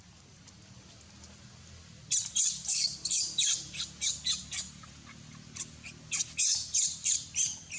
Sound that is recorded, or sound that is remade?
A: recorded